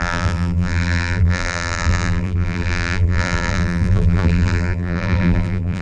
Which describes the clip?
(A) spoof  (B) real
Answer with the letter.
A